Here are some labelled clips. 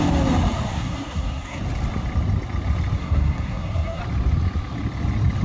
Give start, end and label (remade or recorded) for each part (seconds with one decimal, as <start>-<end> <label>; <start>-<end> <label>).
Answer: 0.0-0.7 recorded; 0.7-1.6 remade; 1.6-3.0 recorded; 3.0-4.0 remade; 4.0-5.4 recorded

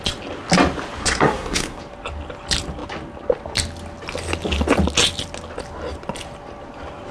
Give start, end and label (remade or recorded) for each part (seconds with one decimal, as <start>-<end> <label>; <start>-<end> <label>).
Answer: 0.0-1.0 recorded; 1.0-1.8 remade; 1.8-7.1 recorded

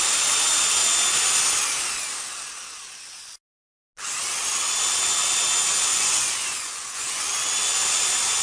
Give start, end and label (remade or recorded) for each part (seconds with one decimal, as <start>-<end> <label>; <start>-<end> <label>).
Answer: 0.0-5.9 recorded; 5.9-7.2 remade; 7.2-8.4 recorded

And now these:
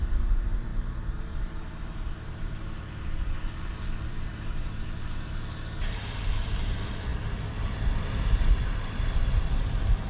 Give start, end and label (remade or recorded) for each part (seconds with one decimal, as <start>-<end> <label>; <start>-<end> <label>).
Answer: 0.0-10.1 remade